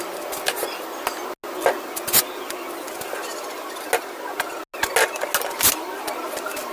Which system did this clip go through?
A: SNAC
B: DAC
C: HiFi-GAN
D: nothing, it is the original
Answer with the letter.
D